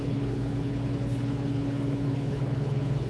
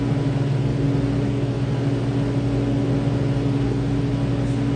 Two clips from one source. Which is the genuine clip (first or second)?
second